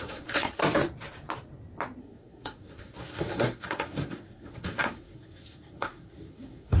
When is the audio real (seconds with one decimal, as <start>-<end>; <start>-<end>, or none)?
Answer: 0.6-2.0